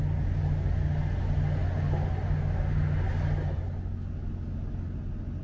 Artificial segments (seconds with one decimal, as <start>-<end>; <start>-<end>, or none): none